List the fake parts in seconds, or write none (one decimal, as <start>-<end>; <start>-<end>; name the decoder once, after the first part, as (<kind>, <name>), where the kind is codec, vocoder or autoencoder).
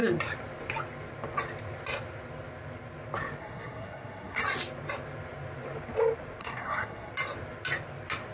3.4-4.4 (codec, SNAC); 6.4-7.1